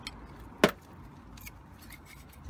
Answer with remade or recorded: recorded